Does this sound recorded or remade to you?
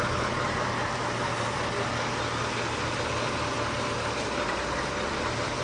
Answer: recorded